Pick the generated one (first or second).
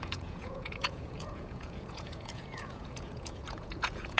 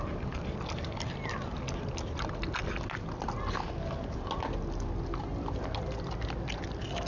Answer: first